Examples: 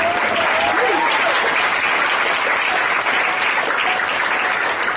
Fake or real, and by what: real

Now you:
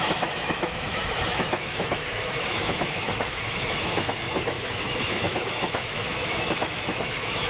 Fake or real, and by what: fake, autoencoder, DAC-VAE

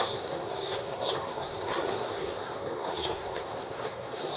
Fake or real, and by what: fake, codec, SNAC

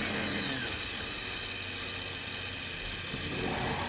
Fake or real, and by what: real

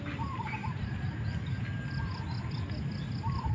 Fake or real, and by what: real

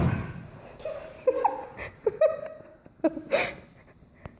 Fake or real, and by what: real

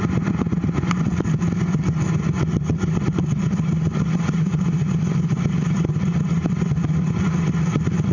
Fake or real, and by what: real